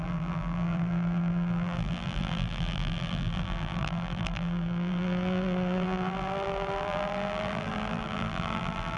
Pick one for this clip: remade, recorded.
remade